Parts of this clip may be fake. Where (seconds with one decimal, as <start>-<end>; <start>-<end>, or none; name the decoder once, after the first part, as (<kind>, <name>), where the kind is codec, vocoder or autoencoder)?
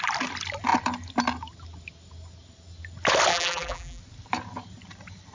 3.3-4.0 (vocoder, BigVGAN v2)